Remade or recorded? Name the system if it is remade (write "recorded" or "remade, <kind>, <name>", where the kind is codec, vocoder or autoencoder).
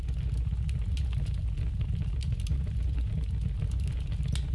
recorded